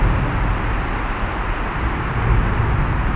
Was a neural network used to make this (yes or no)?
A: no